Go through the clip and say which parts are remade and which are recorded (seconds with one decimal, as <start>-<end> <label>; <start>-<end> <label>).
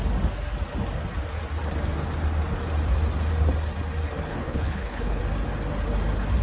0.0-4.3 recorded; 4.3-5.2 remade; 5.2-6.4 recorded